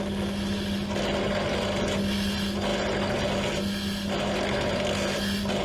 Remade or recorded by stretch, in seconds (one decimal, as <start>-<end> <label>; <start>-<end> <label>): 0.0-5.6 recorded